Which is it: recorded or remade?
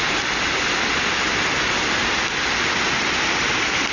recorded